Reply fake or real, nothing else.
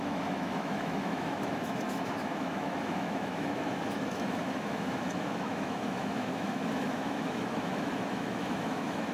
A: fake